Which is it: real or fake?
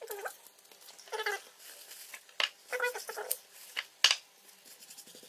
real